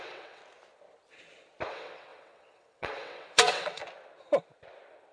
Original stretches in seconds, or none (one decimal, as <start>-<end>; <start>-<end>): 0.4-1.7; 3.8-5.1